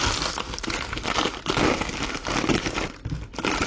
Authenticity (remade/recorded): recorded